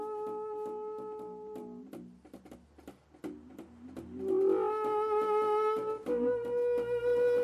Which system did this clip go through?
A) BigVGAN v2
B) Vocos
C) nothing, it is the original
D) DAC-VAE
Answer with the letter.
C